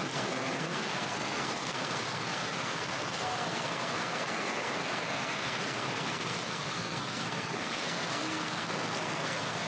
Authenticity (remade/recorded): remade